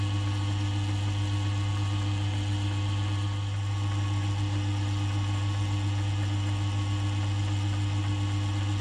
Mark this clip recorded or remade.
recorded